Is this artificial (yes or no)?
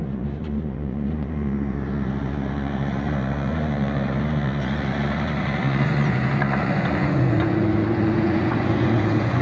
yes